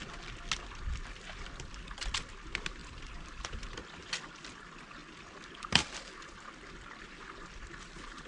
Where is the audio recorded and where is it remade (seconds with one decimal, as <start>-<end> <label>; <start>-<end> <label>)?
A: 0.0-2.8 recorded; 2.8-4.5 remade; 4.5-5.0 recorded; 5.0-7.1 remade; 7.1-8.3 recorded